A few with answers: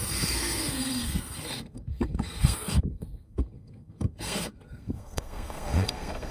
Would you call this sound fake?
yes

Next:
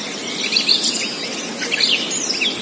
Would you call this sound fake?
no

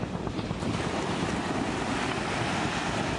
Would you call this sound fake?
no